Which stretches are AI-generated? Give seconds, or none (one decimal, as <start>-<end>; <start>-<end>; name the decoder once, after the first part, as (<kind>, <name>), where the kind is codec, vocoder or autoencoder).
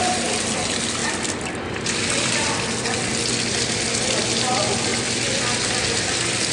1.0-3.1 (vocoder, BigVGAN v2)